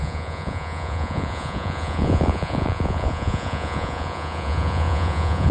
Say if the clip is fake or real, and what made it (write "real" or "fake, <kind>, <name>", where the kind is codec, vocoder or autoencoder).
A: fake, vocoder, Vocos